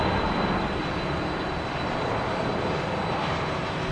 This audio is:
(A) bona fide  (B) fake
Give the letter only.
A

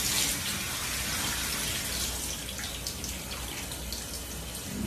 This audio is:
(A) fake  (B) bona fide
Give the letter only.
B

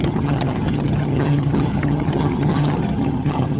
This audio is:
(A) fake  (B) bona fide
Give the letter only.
A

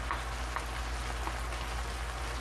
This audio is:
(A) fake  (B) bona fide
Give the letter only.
B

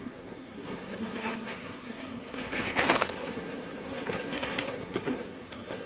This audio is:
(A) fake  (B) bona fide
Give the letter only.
A